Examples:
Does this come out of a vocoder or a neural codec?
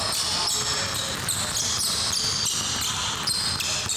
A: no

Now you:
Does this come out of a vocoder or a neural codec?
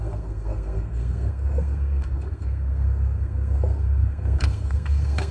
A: yes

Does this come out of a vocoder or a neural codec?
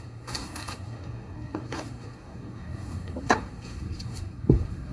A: yes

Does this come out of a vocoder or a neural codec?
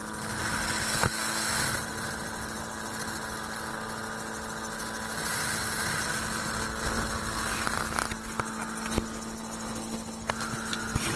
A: no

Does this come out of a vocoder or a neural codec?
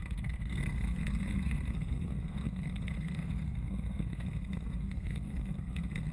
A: yes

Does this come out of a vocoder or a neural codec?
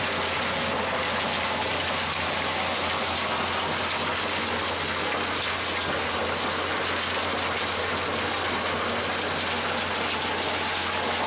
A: no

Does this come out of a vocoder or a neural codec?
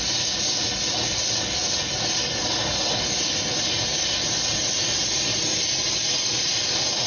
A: no